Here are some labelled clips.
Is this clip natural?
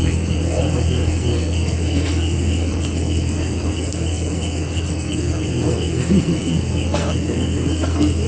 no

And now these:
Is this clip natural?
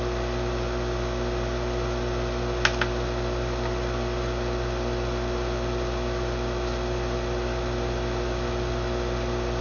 yes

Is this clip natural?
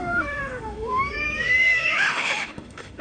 no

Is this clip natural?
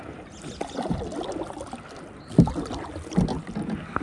yes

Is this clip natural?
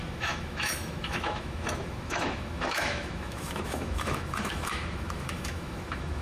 no